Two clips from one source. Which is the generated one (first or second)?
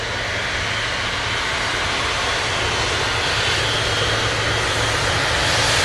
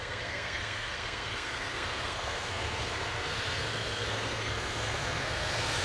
second